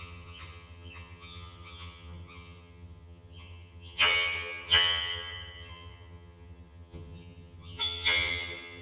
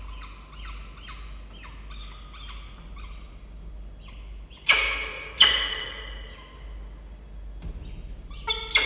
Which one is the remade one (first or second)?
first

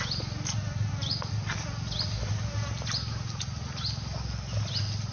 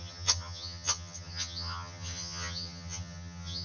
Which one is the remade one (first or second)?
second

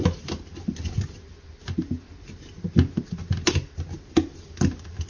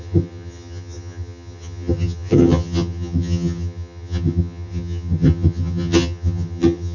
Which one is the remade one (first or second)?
second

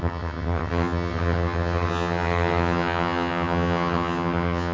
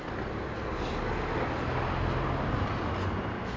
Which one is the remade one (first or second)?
first